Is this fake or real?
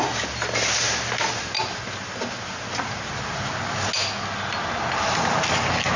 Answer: real